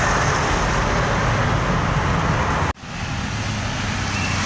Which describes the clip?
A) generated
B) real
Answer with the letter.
B